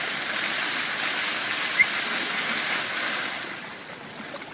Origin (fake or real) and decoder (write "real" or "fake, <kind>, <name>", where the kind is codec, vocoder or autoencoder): fake, vocoder, BigVGAN v2